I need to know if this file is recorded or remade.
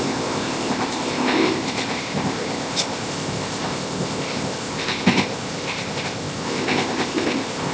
remade